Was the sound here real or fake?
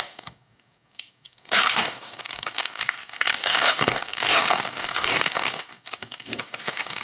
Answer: fake